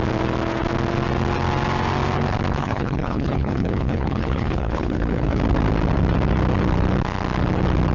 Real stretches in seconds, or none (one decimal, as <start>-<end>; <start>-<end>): 0.0-2.6; 5.4-7.9